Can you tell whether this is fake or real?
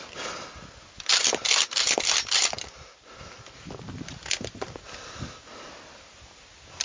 real